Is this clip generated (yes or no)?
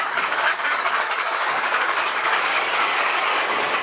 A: yes